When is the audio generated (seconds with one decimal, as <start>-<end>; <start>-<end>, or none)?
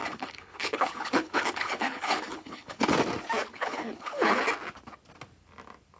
0.0-2.9; 3.5-4.4